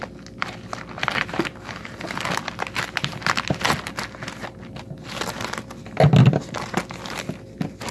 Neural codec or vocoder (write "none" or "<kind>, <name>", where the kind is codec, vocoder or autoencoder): none